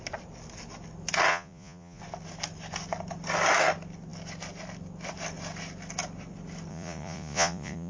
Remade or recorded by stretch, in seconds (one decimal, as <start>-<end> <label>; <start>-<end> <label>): 0.0-1.3 recorded; 1.3-2.0 remade; 2.0-6.7 recorded; 6.7-7.9 remade

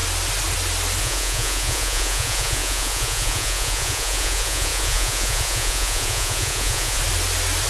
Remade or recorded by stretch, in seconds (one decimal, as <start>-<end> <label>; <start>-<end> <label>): 0.0-1.0 recorded; 1.0-7.0 remade; 7.0-7.7 recorded

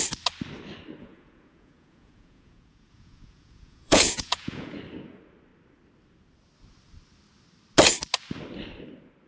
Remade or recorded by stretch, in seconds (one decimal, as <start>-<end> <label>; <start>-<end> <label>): 0.0-1.0 recorded; 1.0-4.8 remade; 4.8-9.3 recorded

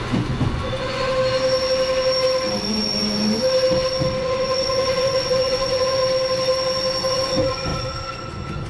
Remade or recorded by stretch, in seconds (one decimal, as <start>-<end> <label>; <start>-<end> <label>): 0.0-1.1 remade; 1.1-4.2 recorded; 4.2-6.0 remade; 6.0-7.1 recorded; 7.1-8.7 remade

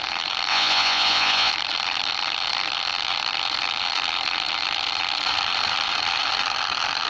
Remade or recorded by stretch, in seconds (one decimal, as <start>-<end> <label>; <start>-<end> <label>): 0.0-0.5 recorded; 0.5-1.5 remade; 1.5-7.1 recorded

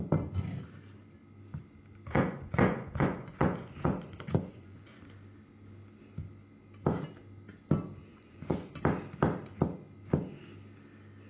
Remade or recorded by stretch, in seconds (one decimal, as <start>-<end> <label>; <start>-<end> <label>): 0.0-2.1 recorded; 2.1-5.0 remade; 5.0-8.1 recorded; 8.1-8.7 remade; 8.7-11.3 recorded

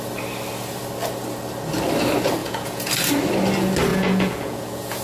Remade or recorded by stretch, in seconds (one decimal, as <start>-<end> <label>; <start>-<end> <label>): 0.0-2.4 recorded; 2.4-2.9 remade; 2.9-3.9 recorded; 3.9-5.0 remade

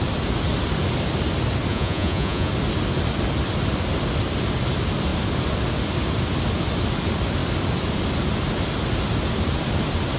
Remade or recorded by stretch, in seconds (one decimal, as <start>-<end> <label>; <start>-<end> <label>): 0.0-1.7 recorded; 1.7-2.5 remade; 2.5-10.2 recorded